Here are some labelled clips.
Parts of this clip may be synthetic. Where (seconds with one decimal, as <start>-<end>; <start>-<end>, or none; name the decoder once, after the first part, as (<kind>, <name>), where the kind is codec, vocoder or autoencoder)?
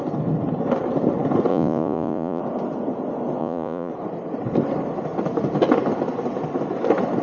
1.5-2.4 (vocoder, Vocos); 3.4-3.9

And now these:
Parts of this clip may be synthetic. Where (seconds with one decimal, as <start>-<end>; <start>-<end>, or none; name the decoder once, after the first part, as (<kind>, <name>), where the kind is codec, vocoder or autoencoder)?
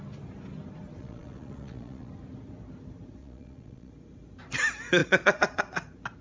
1.0-2.1 (vocoder, Vocos); 3.2-3.9; 5.0-5.6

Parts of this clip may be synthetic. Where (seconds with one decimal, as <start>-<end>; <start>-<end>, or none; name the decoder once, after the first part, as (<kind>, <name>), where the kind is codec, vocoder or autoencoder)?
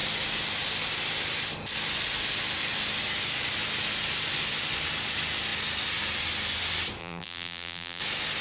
7.0-8.0 (vocoder, BigVGAN v2)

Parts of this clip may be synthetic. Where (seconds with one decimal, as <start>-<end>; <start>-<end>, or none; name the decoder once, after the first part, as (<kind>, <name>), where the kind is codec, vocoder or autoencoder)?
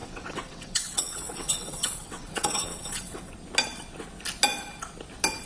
0.0-3.3 (vocoder, WaveNeXt)